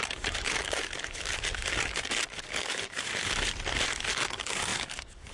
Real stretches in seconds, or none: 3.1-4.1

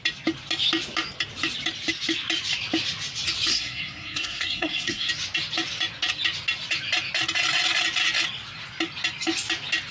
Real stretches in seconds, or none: 0.0-3.5; 5.1-9.9

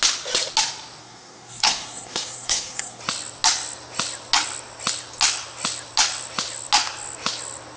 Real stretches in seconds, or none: 0.0-1.0; 3.0-7.8

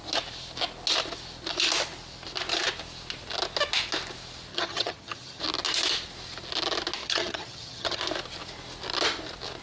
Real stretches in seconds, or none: 0.0-4.5; 5.4-7.0; 8.0-9.6

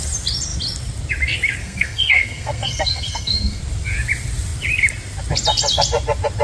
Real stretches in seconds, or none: 0.0-1.6; 3.6-6.4

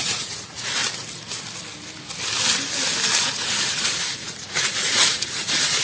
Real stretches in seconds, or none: 0.8-3.2

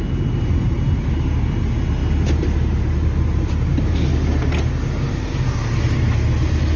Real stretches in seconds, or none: 0.0-6.8

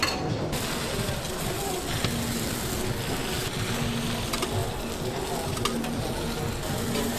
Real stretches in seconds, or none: 0.0-7.2